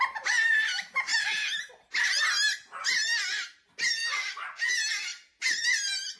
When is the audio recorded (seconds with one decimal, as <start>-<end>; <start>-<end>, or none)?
0.0-6.2